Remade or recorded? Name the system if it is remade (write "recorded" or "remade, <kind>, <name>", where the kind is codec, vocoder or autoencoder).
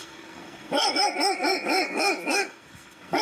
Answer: remade, codec, SNAC